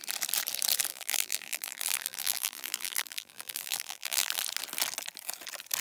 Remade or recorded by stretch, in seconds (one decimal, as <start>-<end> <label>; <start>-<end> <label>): 0.0-0.9 recorded; 0.9-4.4 remade; 4.4-5.8 recorded